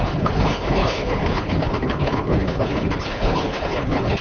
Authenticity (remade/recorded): remade